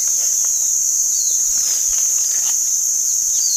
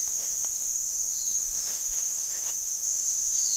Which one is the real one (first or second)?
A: first